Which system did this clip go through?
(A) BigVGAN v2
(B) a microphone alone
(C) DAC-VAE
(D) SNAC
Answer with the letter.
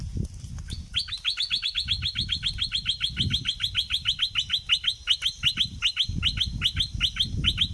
B